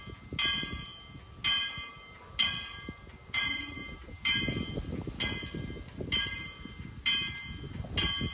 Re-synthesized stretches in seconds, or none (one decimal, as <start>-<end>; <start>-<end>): none